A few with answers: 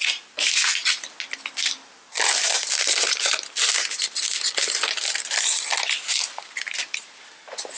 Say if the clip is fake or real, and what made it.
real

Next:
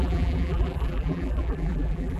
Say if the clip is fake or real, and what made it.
fake, vocoder, BigVGAN v2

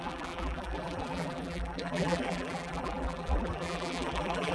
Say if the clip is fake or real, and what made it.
fake, vocoder, BigVGAN v2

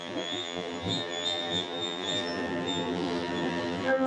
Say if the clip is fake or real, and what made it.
fake, vocoder, BigVGAN v2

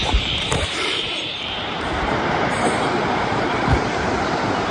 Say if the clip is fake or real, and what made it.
fake, vocoder, BigVGAN v2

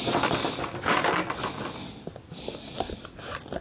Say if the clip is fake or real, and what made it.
real